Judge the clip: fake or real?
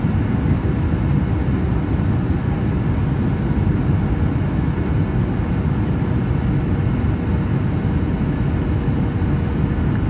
real